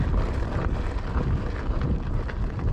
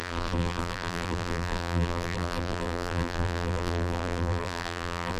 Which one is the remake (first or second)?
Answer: second